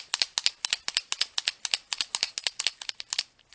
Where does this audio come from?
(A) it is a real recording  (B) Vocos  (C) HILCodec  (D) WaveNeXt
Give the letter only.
A